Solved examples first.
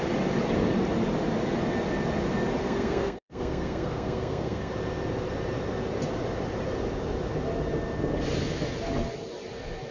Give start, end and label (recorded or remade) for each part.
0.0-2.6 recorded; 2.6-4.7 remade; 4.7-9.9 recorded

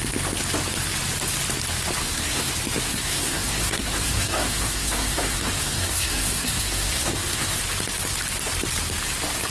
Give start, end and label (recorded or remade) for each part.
0.0-2.0 recorded; 2.0-2.5 remade; 2.5-2.9 recorded; 2.9-7.6 remade; 7.6-9.5 recorded

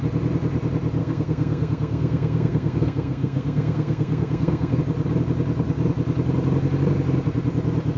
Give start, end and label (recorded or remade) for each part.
0.0-1.0 recorded; 1.0-4.8 remade; 4.8-8.0 recorded

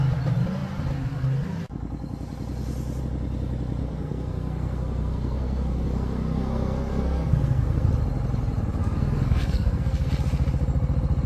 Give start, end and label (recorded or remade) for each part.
0.0-3.8 recorded; 3.8-7.9 remade; 7.9-8.8 recorded; 8.8-10.1 remade; 10.1-11.3 recorded

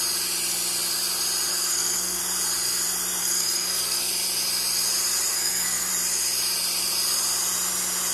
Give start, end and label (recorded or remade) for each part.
0.0-1.5 recorded; 1.5-2.2 remade; 2.2-3.2 recorded; 3.2-4.1 remade; 4.1-5.3 recorded; 5.3-5.9 remade; 5.9-8.1 recorded

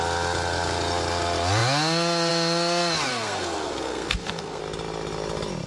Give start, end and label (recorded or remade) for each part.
0.0-3.1 recorded; 3.1-4.6 remade; 4.6-5.7 recorded

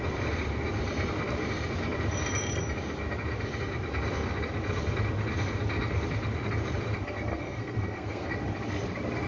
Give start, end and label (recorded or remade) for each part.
0.0-7.3 recorded; 7.3-8.3 remade; 8.3-9.3 recorded